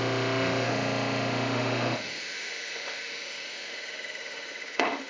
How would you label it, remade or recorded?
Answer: remade